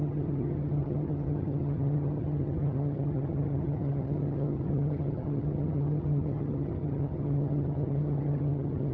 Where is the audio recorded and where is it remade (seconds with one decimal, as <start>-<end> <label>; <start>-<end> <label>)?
0.0-8.9 remade

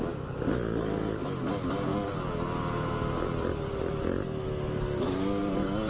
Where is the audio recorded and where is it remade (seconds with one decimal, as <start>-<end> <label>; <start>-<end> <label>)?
0.0-5.9 recorded

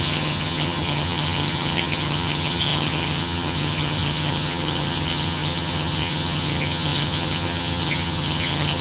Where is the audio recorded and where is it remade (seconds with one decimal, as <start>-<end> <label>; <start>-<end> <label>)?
0.0-8.8 remade

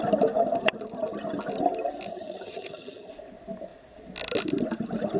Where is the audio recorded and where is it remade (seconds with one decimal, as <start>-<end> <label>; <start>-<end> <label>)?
0.0-2.1 recorded; 2.1-3.1 remade; 3.1-5.2 recorded

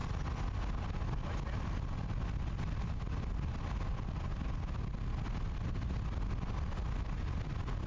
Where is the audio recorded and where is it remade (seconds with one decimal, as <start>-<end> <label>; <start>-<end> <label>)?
0.0-7.9 recorded

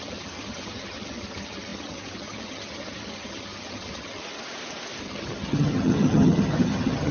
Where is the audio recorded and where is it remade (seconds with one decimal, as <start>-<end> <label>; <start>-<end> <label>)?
0.0-4.2 remade; 4.2-5.0 recorded; 5.0-7.1 remade

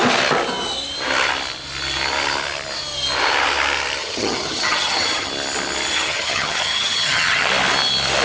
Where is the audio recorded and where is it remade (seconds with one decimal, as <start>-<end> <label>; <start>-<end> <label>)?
0.0-4.0 recorded; 4.0-5.3 remade; 5.3-5.9 recorded; 5.9-7.5 remade; 7.5-8.2 recorded

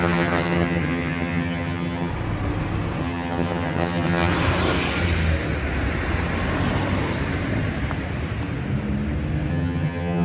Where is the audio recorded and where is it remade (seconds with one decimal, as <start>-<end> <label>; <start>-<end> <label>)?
0.0-2.1 remade; 2.1-3.0 recorded; 3.0-4.3 remade; 4.3-9.5 recorded; 9.5-10.2 remade